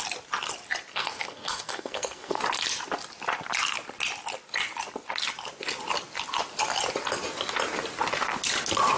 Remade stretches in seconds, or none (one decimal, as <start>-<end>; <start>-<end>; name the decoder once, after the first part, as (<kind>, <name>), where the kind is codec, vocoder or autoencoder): 0.9-2.4 (codec, SNAC)